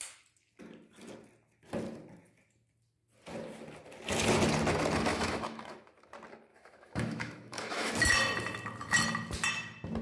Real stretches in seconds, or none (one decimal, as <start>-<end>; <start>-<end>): 0.0-5.1; 5.9-6.5; 7.9-10.0